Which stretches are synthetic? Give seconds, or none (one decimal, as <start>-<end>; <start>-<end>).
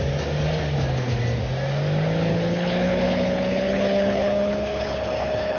2.3-5.6